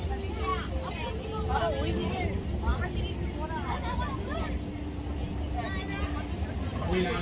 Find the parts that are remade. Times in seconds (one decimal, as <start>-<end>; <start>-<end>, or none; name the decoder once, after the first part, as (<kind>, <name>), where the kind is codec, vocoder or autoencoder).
none